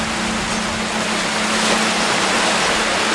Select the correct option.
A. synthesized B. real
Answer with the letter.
B